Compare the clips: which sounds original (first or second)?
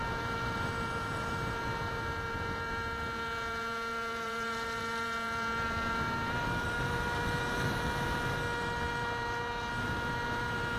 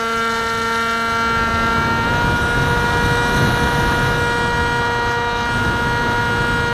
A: second